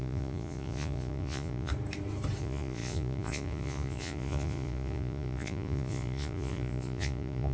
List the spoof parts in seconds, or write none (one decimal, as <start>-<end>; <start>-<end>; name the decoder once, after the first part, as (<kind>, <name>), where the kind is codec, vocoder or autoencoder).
0.0-1.7 (vocoder, Vocos); 2.4-7.5